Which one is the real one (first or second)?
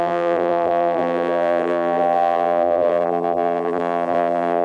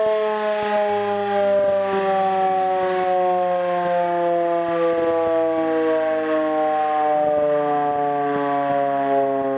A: second